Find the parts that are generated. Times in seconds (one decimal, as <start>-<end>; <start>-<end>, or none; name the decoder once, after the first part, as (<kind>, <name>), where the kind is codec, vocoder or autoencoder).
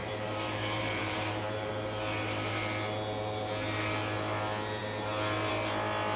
0.0-1.7 (vocoder, BigVGAN v2)